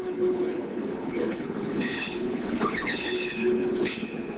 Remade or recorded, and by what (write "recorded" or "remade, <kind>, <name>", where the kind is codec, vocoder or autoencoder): remade, codec, HILCodec